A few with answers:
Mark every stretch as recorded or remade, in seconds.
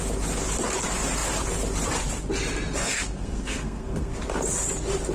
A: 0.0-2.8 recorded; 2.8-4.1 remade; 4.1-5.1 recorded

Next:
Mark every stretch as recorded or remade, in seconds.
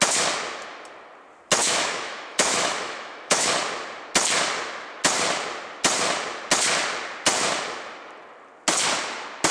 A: 0.0-1.6 recorded; 1.6-3.5 remade; 3.5-9.5 recorded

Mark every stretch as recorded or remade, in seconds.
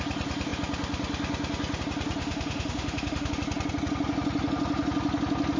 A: 0.0-2.2 recorded; 2.2-3.3 remade; 3.3-5.6 recorded